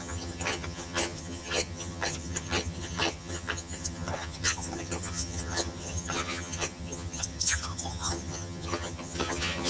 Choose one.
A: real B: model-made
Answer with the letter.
B